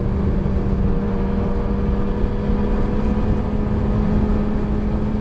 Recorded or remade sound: recorded